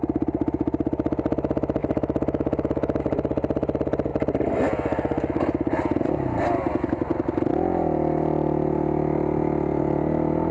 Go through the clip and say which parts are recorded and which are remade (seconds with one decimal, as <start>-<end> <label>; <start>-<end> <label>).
0.0-1.8 recorded; 1.8-3.0 remade; 3.0-10.5 recorded